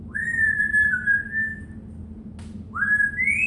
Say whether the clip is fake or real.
real